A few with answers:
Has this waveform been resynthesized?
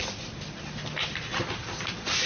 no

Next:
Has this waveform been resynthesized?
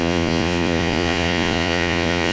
yes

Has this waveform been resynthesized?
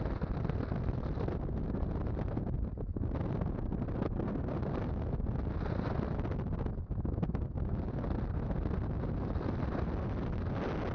no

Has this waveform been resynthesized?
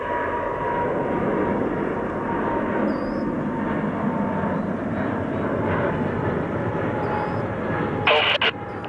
no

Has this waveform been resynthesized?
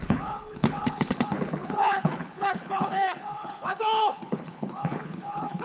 yes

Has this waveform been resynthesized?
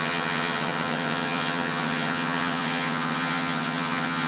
yes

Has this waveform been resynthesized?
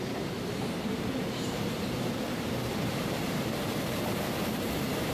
yes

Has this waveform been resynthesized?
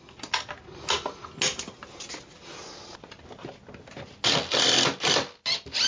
no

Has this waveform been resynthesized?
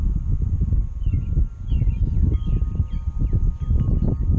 no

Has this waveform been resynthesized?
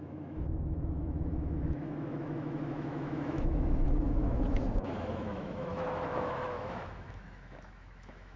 yes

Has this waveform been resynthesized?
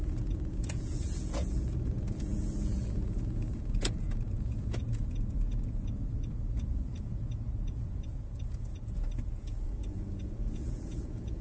yes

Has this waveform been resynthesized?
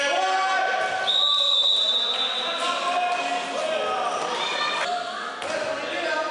no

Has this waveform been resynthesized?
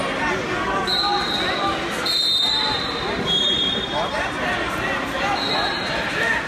no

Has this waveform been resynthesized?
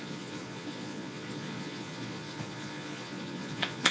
yes